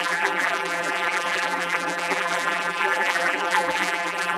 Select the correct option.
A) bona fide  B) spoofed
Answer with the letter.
B